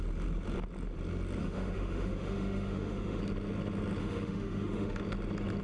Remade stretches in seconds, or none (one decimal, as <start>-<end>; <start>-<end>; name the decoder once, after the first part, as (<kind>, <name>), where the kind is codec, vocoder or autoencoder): 1.4-3.2 (autoencoder, DAC-VAE); 4.0-5.0